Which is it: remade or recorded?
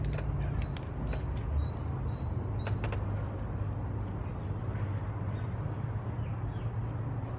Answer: recorded